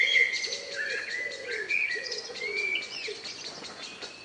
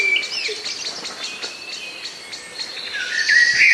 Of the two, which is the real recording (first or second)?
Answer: second